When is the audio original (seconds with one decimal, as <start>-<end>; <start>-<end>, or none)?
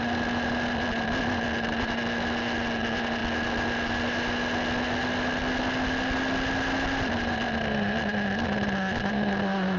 0.0-9.8